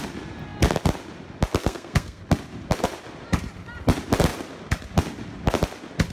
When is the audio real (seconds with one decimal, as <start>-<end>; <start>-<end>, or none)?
0.0-1.6; 2.2-6.1